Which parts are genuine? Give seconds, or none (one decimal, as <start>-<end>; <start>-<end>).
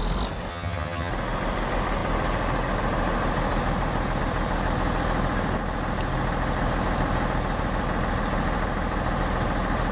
0.0-0.5; 1.1-9.9